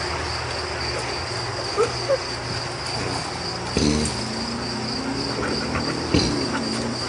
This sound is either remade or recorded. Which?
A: recorded